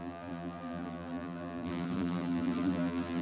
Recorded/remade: remade